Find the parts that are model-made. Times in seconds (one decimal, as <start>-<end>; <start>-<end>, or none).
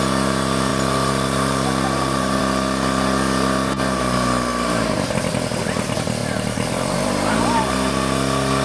0.7-2.4; 6.2-7.9